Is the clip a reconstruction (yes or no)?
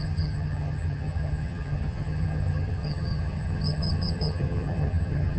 yes